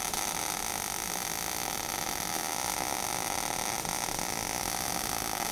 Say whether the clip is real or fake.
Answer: real